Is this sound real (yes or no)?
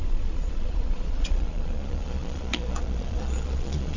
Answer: no